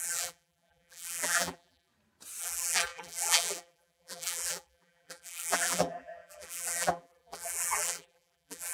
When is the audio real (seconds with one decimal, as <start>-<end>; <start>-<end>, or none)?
1.9-2.4